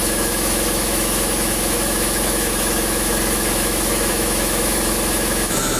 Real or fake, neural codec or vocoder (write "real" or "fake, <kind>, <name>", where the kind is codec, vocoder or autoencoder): fake, autoencoder, DAC-VAE